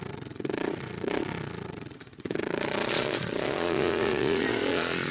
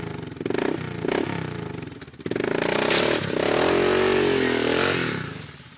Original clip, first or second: second